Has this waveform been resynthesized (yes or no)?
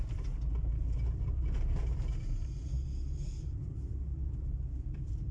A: no